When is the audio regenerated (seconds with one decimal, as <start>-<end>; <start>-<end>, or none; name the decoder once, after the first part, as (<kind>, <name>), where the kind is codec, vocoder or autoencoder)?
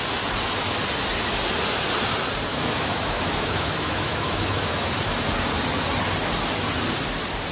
2.5-4.9 (autoencoder, DAC-VAE)